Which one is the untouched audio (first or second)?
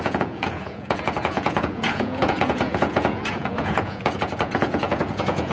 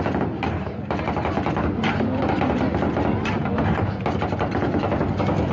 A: second